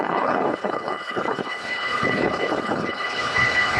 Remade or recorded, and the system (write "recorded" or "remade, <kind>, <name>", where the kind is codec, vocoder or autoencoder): remade, codec, HILCodec